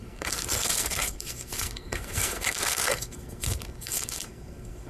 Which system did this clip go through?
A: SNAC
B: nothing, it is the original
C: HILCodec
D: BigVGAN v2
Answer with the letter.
A